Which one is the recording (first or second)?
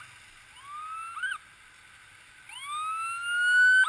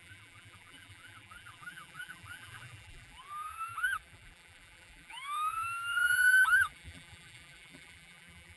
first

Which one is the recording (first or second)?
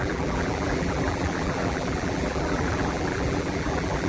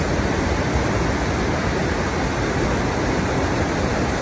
second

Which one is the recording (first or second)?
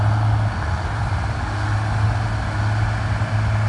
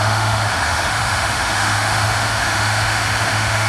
first